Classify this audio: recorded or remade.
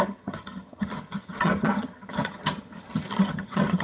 remade